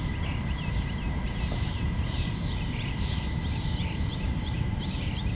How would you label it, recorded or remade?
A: remade